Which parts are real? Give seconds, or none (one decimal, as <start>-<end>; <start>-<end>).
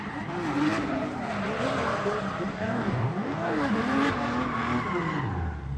0.0-2.5; 3.7-5.8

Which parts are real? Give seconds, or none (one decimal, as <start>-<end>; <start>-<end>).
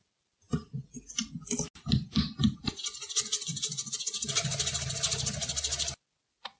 0.0-6.6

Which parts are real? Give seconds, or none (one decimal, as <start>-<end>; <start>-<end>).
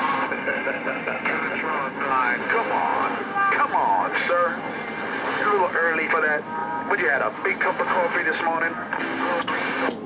0.0-10.1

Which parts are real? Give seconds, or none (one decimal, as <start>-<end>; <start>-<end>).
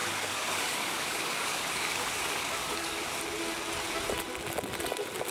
3.2-5.3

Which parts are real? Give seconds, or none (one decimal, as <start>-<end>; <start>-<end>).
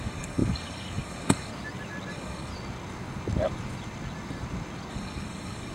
1.5-2.1; 2.5-4.9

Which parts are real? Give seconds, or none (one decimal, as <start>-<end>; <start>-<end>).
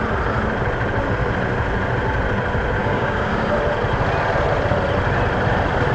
0.0-2.8; 3.5-5.9